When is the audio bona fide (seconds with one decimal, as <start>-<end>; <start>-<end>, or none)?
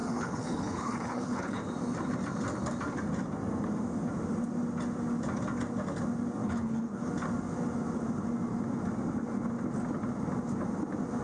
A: 1.6-6.4; 7.1-11.2